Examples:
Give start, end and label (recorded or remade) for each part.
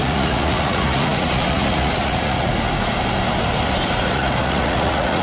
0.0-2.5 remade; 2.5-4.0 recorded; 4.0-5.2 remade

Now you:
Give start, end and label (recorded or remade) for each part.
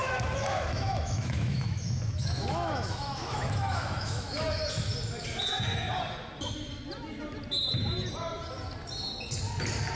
0.0-4.6 remade; 4.6-10.0 recorded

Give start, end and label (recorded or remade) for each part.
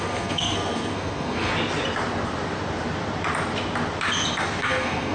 0.0-1.5 remade; 1.5-4.6 recorded; 4.6-5.1 remade